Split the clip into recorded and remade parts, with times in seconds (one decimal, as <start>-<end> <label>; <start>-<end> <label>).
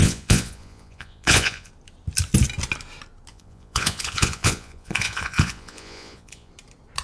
0.0-1.7 remade; 1.7-3.3 recorded; 3.3-6.5 remade; 6.5-7.0 recorded